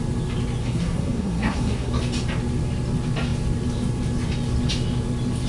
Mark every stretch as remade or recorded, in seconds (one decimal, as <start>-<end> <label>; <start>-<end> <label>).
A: 0.0-0.6 recorded; 0.6-1.9 remade; 1.9-5.5 recorded